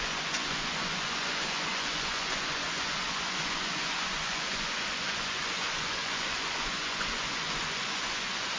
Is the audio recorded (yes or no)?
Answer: no